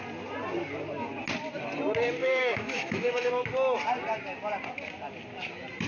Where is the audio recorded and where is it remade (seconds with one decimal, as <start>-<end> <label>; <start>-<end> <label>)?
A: 0.0-2.2 recorded; 2.2-3.3 remade; 3.3-5.9 recorded